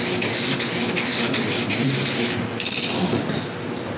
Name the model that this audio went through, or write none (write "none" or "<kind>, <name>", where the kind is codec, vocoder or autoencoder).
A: none